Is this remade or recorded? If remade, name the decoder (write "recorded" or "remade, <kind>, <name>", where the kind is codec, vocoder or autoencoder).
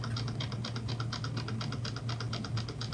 recorded